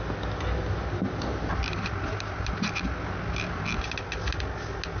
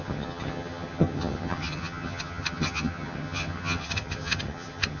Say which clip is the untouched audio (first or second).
first